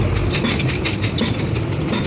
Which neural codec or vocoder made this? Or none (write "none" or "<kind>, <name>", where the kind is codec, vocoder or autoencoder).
none